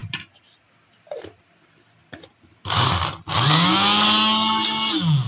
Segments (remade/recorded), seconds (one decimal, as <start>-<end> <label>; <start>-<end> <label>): 0.0-5.3 recorded